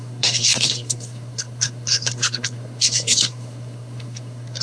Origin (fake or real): fake